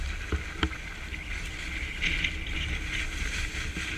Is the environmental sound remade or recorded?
recorded